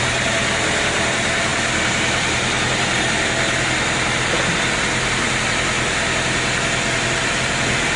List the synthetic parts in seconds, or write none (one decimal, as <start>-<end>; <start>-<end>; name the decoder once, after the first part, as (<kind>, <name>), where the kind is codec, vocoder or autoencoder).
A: none